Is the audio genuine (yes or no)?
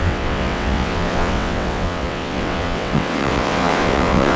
no